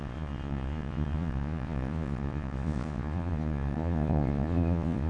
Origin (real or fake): fake